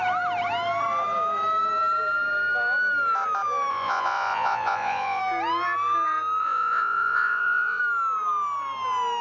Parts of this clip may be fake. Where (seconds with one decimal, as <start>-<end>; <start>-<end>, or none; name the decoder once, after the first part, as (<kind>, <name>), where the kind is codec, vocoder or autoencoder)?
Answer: 3.7-5.2 (vocoder, Vocos); 6.4-7.8